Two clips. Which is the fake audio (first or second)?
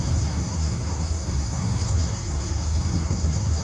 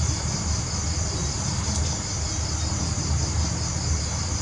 first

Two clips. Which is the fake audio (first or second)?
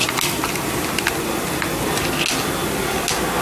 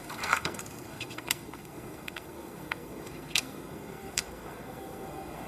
second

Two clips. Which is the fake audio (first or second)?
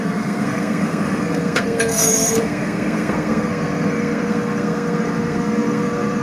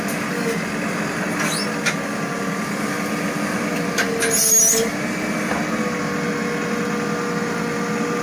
first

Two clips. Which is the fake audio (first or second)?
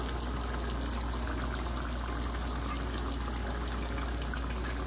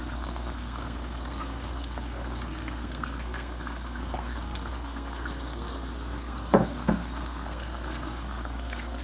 second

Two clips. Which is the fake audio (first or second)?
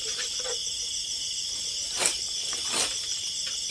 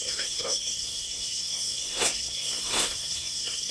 second